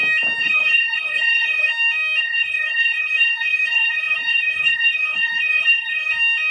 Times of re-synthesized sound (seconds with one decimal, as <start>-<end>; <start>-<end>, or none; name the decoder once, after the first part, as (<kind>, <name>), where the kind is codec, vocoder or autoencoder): 0.4-1.7 (codec, HILCodec); 2.2-6.1